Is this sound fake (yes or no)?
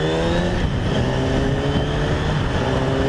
no